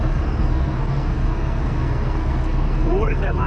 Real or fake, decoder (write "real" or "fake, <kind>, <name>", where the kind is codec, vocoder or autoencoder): fake, codec, SNAC